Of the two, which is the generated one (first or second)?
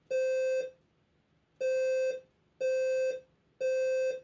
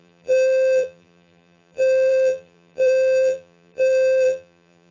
second